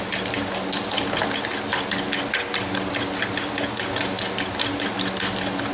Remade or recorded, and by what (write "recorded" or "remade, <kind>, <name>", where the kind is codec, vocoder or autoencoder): recorded